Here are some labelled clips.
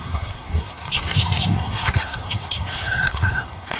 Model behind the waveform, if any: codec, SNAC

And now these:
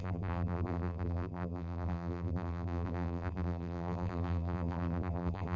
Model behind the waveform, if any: vocoder, BigVGAN v2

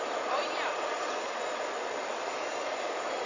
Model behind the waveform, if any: none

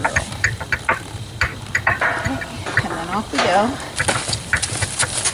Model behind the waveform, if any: none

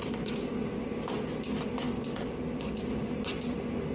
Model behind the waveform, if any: none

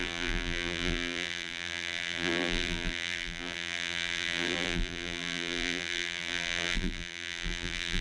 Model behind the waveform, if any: vocoder, BigVGAN v2